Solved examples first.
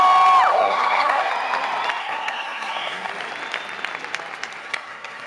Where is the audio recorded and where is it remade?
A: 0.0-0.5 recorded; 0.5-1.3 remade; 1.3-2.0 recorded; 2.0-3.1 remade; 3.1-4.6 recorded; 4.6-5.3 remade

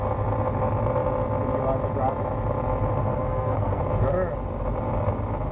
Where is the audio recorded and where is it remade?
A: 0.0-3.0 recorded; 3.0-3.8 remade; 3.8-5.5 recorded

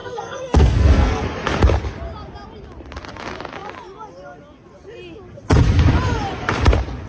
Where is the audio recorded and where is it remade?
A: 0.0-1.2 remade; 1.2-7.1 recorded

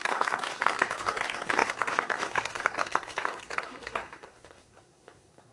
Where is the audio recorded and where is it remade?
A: 0.0-5.5 remade

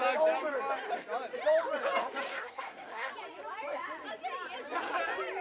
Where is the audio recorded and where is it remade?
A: 0.0-2.3 recorded; 2.3-3.1 remade; 3.1-5.4 recorded